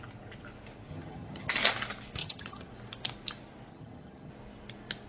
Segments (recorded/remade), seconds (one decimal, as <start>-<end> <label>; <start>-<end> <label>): 0.0-0.9 recorded; 0.9-1.5 remade; 1.5-2.2 recorded; 2.2-2.7 remade; 2.7-3.7 recorded; 3.7-4.3 remade; 4.3-5.1 recorded